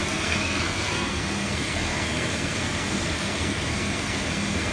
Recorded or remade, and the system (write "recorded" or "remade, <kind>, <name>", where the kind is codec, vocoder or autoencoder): remade, codec, SNAC